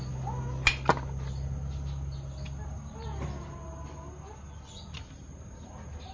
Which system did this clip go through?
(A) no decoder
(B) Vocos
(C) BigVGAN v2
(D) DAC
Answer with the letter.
A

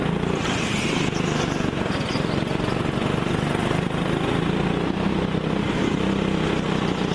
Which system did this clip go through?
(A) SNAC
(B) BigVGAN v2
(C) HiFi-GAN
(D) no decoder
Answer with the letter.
D